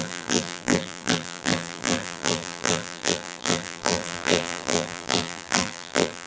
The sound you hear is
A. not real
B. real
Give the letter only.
A